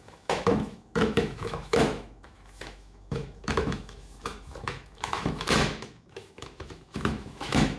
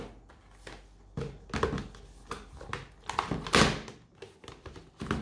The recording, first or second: second